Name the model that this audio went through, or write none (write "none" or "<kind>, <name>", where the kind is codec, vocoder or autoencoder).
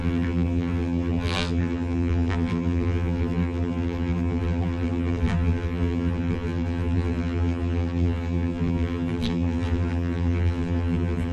vocoder, BigVGAN v2